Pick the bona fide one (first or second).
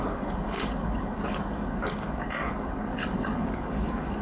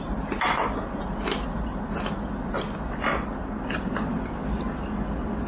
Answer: second